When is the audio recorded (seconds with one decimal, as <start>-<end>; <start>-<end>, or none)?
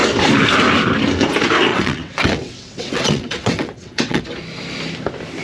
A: 0.0-1.7; 4.2-5.4